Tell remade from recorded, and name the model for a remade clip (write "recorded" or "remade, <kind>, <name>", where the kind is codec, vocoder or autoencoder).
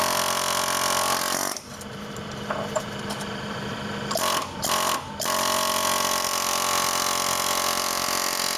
remade, vocoder, BigVGAN v2